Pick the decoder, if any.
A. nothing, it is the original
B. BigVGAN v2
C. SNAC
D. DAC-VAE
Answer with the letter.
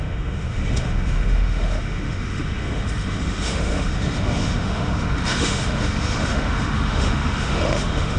D